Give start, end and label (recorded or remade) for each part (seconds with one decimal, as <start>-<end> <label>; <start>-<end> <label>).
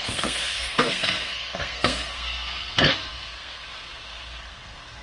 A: 0.0-5.0 remade